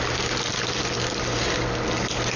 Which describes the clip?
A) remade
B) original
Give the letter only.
B